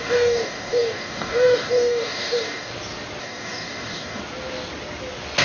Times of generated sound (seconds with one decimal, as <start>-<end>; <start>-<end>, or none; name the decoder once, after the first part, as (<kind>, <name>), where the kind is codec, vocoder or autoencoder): 0.0-2.7 (codec, DAC); 3.2-4.2